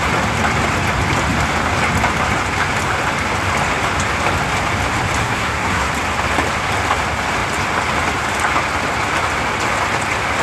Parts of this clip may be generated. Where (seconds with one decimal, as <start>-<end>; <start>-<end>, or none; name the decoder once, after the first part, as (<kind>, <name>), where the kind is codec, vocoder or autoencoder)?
5.2-5.9 (codec, SNAC)